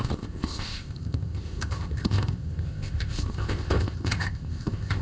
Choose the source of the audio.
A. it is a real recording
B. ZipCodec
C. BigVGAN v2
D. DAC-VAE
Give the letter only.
B